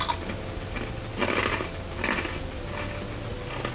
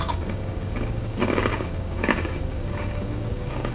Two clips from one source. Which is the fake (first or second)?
second